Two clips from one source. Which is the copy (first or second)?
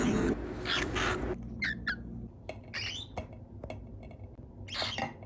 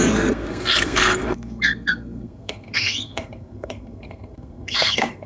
second